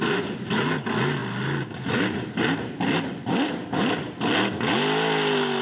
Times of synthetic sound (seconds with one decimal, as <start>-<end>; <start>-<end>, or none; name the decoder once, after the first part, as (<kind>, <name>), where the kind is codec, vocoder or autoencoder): none